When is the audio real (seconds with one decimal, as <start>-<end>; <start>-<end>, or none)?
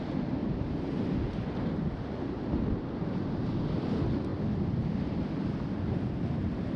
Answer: 0.0-0.4; 3.5-6.8